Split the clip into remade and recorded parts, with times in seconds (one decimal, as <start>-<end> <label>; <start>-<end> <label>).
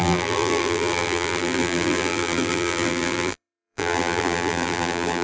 0.0-5.2 remade